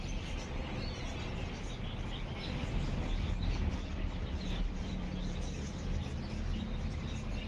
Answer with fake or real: real